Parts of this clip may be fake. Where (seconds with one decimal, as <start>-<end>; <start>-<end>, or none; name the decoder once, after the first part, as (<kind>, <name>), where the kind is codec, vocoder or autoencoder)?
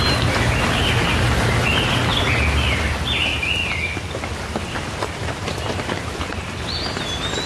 3.3-4.3 (vocoder, BigVGAN v2)